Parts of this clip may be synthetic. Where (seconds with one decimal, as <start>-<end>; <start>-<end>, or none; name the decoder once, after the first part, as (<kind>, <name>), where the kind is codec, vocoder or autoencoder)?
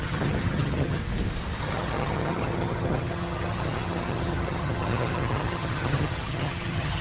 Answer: 0.0-1.0 (vocoder, HiFi-GAN); 1.6-7.0